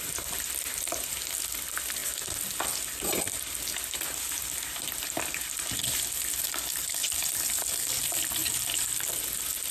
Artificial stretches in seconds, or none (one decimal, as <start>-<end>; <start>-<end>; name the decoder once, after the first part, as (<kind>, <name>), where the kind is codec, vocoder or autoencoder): none